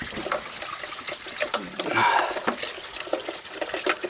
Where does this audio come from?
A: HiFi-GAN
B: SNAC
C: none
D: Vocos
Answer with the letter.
C